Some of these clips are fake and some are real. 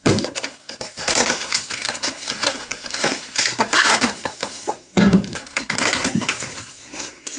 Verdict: fake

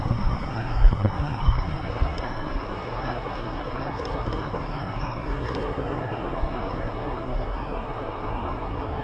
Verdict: fake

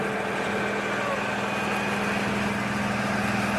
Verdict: real